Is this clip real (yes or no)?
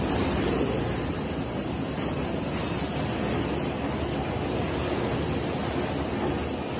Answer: yes